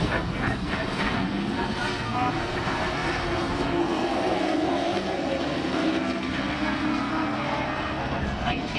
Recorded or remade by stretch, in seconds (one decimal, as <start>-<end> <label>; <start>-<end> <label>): 0.0-8.8 remade